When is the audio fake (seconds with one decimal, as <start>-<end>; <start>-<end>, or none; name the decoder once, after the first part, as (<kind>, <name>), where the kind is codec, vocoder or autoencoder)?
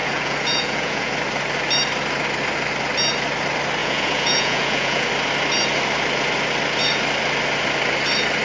0.0-1.1 (vocoder, Vocos); 3.8-5.1